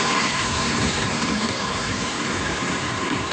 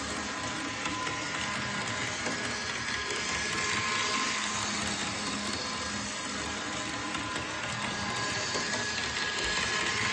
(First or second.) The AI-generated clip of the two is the first